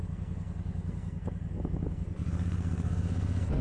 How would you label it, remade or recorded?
remade